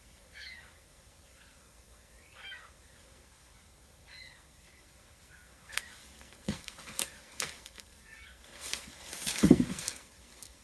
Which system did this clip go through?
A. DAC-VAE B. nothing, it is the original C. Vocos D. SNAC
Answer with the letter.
D